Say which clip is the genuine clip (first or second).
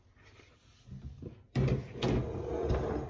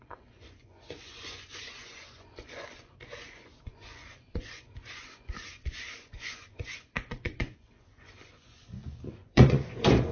first